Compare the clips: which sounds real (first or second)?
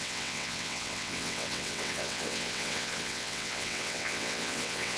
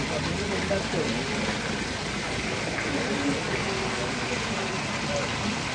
second